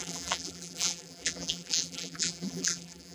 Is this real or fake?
fake